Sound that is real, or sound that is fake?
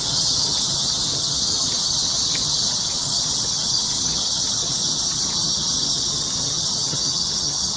fake